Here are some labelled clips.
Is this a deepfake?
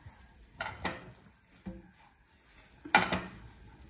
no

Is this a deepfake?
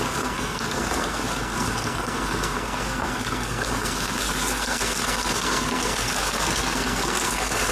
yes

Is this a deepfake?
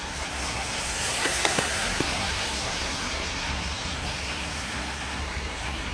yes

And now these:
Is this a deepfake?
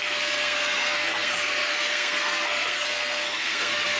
yes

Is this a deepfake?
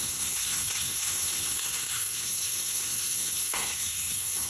yes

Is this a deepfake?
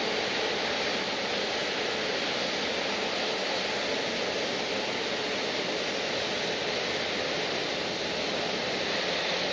no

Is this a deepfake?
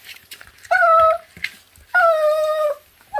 no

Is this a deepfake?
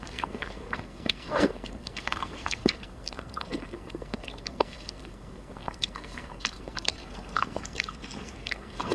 yes